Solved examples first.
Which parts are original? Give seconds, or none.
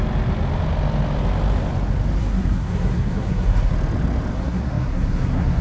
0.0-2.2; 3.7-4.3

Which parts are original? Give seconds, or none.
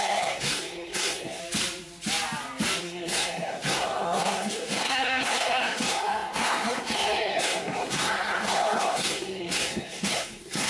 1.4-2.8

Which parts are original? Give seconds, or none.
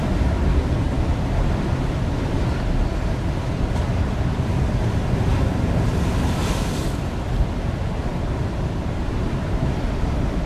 0.0-0.5; 1.0-10.5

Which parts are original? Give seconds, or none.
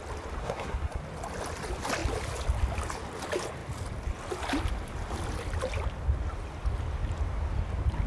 0.0-0.4; 1.0-8.1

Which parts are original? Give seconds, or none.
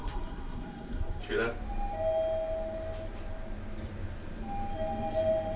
1.2-5.6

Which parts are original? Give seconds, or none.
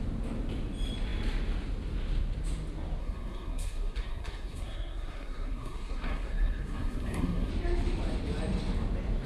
0.0-3.0; 7.5-9.3